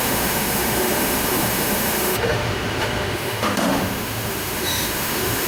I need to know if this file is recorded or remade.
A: remade